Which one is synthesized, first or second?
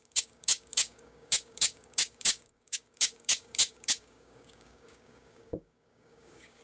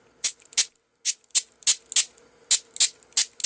first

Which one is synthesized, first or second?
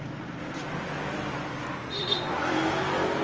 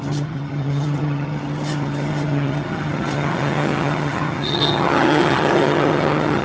second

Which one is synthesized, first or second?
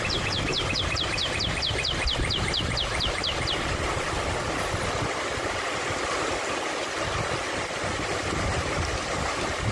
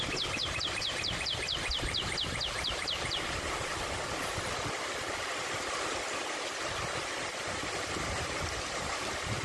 second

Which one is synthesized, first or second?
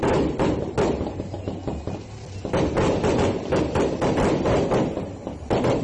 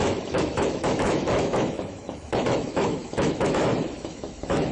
second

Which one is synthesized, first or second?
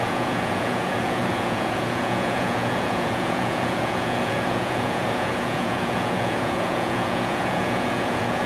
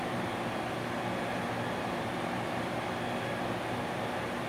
first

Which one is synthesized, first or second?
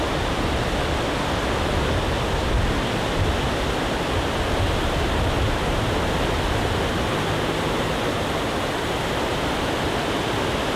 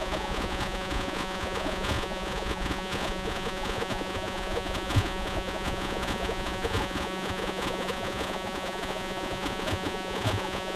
second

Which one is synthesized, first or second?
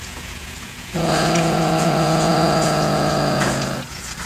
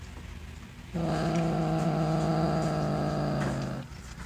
first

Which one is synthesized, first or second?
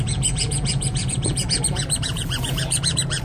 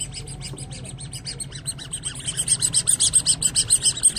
first